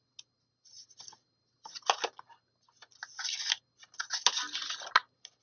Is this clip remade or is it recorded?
recorded